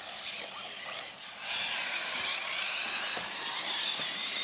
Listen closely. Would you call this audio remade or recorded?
recorded